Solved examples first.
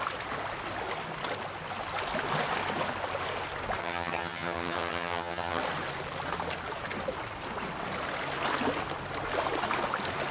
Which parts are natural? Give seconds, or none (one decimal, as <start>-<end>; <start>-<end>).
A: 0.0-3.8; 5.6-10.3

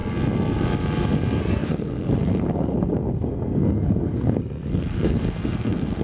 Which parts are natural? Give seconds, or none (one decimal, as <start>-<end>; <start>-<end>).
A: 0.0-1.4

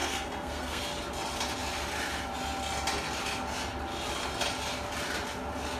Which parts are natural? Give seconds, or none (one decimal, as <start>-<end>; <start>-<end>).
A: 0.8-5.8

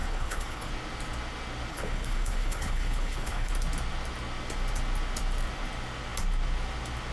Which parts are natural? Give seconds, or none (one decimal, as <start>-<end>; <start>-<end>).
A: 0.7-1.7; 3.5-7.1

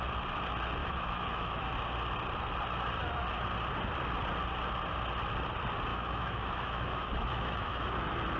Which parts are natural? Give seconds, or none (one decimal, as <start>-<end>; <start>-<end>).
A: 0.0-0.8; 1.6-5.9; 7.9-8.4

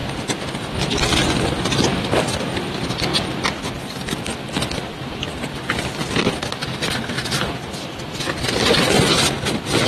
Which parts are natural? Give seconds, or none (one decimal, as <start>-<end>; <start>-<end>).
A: 0.0-9.9